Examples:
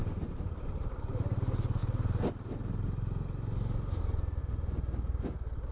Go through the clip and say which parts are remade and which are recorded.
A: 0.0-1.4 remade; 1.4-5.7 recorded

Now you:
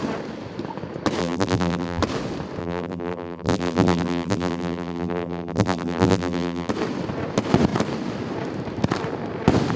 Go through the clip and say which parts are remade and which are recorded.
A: 0.0-1.2 recorded; 1.2-2.0 remade; 2.0-2.6 recorded; 2.6-6.7 remade; 6.7-9.8 recorded

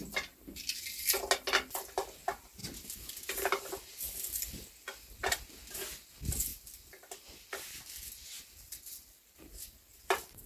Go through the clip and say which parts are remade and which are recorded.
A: 0.0-10.5 recorded

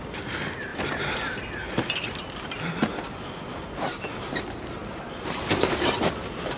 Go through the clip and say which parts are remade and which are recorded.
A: 0.0-0.7 recorded; 0.7-1.3 remade; 1.3-2.2 recorded; 2.2-2.8 remade; 2.8-4.8 recorded; 4.8-6.6 remade